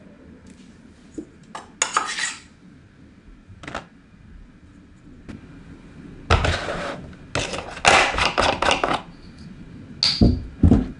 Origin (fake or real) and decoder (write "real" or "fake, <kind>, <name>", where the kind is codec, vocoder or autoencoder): real